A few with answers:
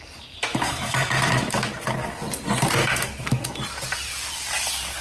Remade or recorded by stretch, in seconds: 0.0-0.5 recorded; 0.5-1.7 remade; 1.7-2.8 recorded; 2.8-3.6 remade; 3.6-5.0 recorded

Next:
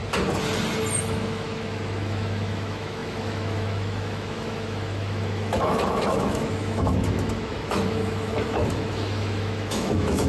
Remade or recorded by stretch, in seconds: 0.0-1.0 recorded; 1.0-10.3 remade